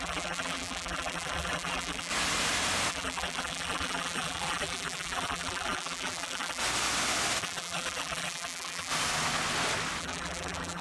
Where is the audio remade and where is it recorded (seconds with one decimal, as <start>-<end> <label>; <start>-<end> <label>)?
0.0-2.1 remade; 2.1-2.9 recorded; 2.9-6.6 remade; 6.6-7.4 recorded; 7.4-8.9 remade; 8.9-10.0 recorded; 10.0-10.8 remade